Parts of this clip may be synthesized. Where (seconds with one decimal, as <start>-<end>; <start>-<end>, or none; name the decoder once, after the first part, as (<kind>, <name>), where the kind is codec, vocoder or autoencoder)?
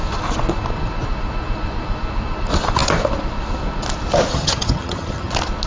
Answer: 4.3-5.3 (vocoder, HiFi-GAN)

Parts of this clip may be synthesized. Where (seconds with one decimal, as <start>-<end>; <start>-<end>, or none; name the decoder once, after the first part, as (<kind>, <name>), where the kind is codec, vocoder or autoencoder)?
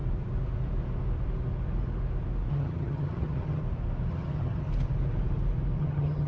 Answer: 2.5-3.6 (vocoder, HiFi-GAN); 4.1-4.7; 5.8-6.3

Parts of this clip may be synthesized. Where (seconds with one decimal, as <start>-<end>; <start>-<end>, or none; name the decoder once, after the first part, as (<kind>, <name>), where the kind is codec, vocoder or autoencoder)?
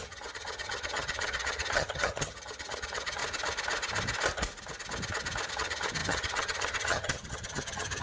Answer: 0.0-3.2 (vocoder, HiFi-GAN); 5.5-8.0